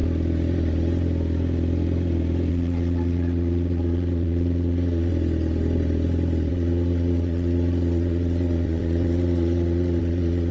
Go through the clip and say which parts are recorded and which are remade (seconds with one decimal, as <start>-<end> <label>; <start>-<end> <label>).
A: 0.0-2.5 recorded; 2.5-5.1 remade; 5.1-6.5 recorded; 6.5-10.5 remade